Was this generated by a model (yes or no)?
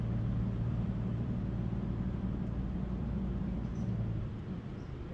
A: yes